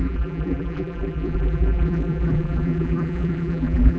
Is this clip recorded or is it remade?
remade